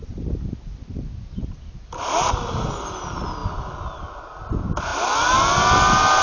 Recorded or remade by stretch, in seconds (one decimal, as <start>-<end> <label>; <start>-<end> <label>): 0.0-6.2 recorded